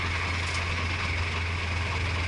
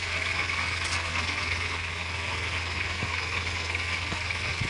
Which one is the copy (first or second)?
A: second